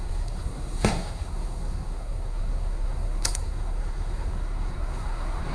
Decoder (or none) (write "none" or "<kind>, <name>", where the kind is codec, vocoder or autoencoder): codec, SNAC